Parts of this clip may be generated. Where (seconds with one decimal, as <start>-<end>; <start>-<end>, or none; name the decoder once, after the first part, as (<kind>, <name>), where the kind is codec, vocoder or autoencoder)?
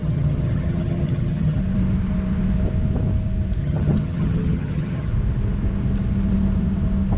0.0-1.6 (vocoder, HiFi-GAN); 3.6-5.1